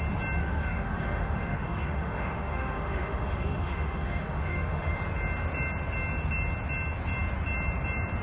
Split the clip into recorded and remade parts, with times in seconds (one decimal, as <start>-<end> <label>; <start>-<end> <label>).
0.0-0.4 recorded; 0.4-5.0 remade; 5.0-8.2 recorded